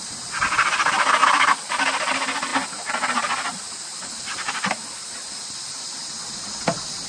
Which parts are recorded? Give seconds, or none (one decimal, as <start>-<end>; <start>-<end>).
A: 0.0-7.1